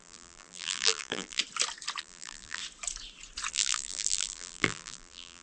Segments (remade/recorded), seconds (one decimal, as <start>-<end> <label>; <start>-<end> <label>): 0.0-1.4 remade; 1.4-2.0 recorded; 2.0-2.6 remade; 2.6-3.5 recorded; 3.5-5.4 remade